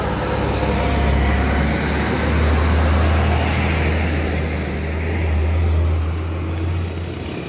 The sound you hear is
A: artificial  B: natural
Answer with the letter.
B